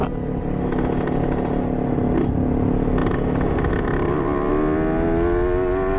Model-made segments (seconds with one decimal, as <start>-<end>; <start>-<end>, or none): none